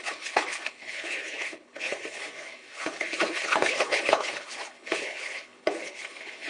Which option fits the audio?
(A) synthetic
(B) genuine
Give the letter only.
A